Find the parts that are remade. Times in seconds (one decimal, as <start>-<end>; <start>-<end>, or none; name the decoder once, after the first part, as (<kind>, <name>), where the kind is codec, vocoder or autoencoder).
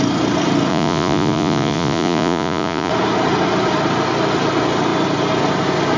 0.7-2.9 (vocoder, Vocos)